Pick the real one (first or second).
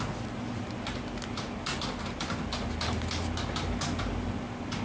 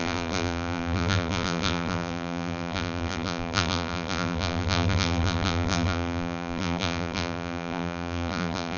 first